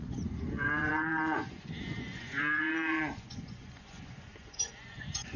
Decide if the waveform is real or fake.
fake